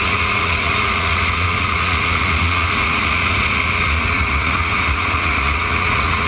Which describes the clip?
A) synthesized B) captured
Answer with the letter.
A